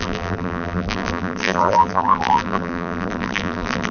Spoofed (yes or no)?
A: yes